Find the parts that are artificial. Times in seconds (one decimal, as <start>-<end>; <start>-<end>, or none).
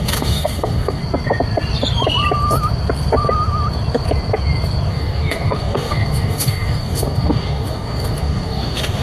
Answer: 0.0-1.0; 4.9-9.0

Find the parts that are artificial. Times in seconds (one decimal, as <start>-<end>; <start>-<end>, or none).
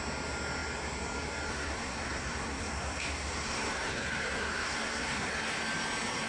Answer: 1.5-5.3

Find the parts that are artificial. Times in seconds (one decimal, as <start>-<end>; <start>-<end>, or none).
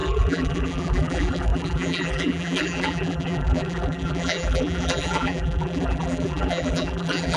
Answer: 0.0-7.4